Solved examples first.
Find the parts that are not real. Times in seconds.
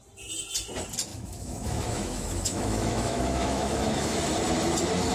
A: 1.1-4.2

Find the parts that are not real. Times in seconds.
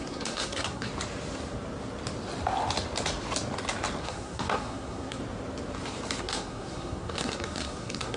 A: 0.0-0.9; 4.0-5.2; 6.2-8.2